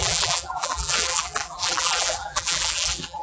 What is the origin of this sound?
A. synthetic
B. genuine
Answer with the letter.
A